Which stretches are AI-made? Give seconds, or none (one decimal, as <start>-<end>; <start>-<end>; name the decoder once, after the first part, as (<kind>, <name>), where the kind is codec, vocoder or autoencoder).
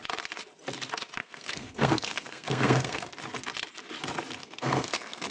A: 1.2-3.1 (codec, SNAC); 4.4-5.3